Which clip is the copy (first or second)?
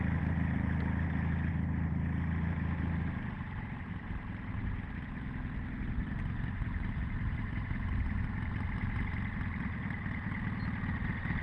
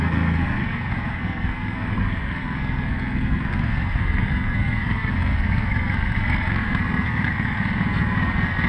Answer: second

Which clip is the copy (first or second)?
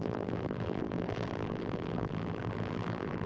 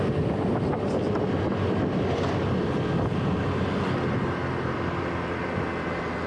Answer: first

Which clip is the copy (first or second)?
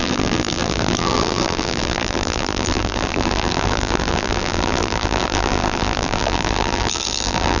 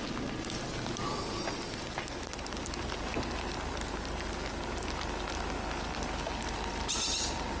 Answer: first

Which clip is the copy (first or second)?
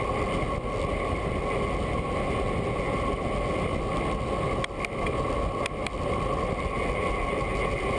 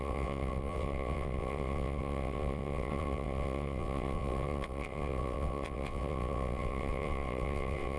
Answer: second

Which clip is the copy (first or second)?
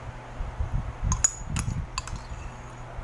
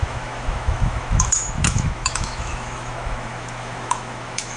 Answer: second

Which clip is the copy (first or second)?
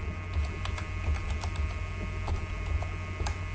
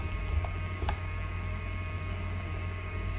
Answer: second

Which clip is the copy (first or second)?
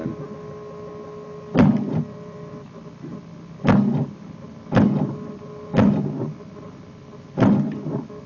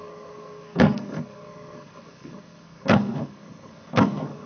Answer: second